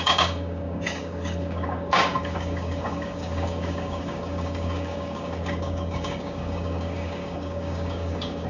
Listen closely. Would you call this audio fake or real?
fake